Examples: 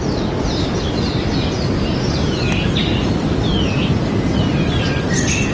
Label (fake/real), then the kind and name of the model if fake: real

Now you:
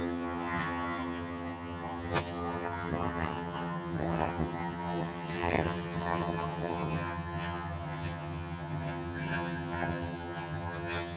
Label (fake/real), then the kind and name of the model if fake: fake, vocoder, HiFi-GAN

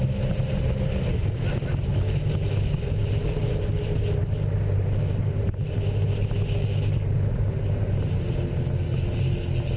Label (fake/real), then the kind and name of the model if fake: real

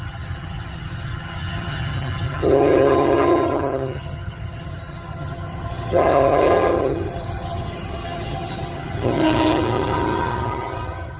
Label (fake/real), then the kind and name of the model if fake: fake, vocoder, HiFi-GAN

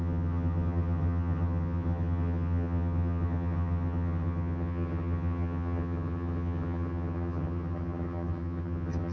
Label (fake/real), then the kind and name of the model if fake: fake, vocoder, HiFi-GAN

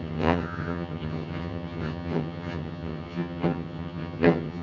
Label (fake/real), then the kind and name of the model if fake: fake, vocoder, HiFi-GAN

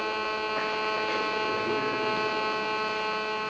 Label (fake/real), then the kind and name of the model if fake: real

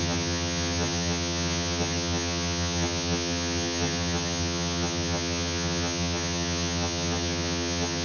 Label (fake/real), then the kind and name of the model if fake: fake, vocoder, HiFi-GAN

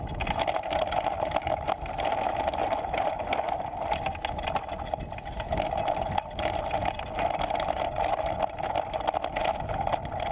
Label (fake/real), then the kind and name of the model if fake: real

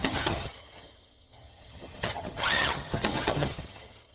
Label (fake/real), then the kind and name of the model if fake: fake, vocoder, HiFi-GAN